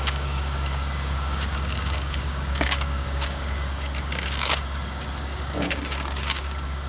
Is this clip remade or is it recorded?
remade